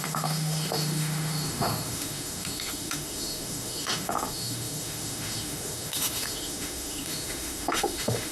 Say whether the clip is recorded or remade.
remade